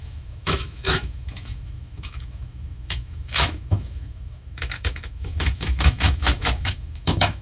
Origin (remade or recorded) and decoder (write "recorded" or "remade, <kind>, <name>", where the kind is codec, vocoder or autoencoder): remade, autoencoder, DAC-VAE